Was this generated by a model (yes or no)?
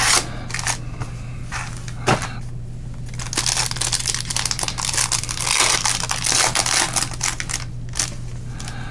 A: no